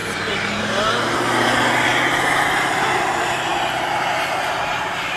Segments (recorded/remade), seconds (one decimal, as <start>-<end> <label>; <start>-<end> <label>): 0.0-0.6 recorded; 0.6-1.9 remade; 1.9-2.7 recorded; 2.7-3.5 remade; 3.5-5.2 recorded